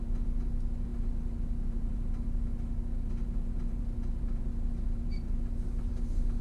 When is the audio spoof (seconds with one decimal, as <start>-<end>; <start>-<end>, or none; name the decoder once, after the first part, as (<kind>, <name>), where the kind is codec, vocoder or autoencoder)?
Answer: none